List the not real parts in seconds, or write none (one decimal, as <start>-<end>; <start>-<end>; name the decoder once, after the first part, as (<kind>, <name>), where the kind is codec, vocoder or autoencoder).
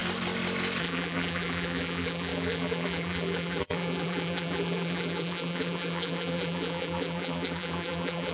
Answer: 0.8-8.3 (vocoder, BigVGAN v2)